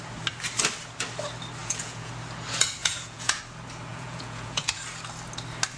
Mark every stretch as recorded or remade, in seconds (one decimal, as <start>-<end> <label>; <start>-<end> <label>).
0.0-1.6 recorded; 1.6-2.1 remade; 2.1-2.8 recorded; 2.8-3.4 remade; 3.4-3.9 recorded; 3.9-4.7 remade; 4.7-5.8 recorded